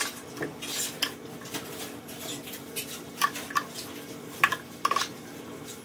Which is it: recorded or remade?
recorded